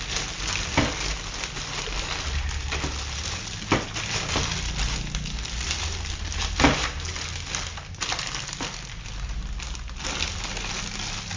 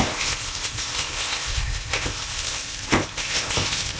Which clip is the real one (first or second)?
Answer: first